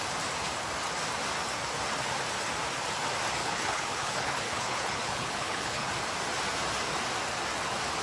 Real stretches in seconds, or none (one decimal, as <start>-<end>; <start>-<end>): 0.0-3.4; 5.9-8.0